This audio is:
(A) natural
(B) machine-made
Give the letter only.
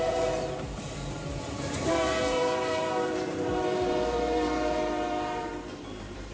B